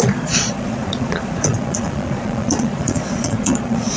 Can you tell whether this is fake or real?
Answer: fake